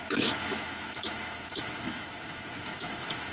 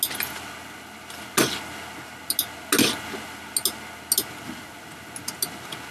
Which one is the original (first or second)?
second